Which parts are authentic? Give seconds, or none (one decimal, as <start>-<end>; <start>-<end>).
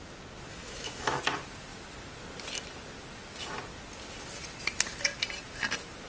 0.0-0.5; 1.2-6.1